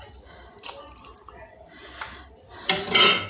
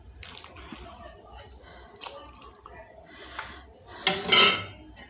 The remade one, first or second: first